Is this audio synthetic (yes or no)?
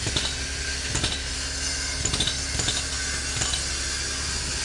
no